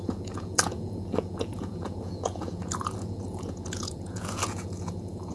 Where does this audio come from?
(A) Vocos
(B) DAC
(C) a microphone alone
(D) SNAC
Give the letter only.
A